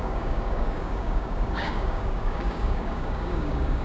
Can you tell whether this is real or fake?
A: fake